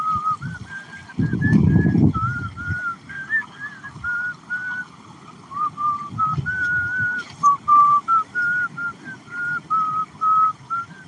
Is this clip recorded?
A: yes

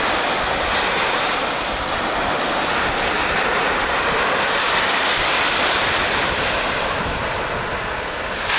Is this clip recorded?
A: yes